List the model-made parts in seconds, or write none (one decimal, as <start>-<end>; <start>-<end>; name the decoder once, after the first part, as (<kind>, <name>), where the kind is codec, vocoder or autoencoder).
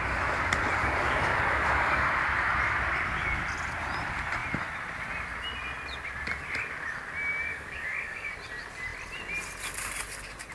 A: 0.8-2.1 (codec, DAC); 7.5-8.3